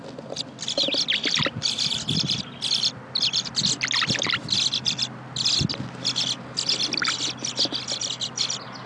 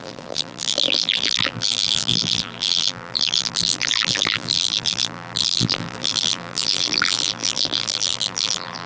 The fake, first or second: second